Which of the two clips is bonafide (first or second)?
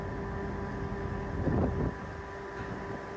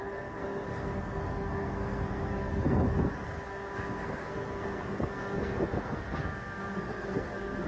first